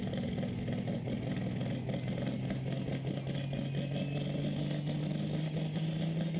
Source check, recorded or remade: recorded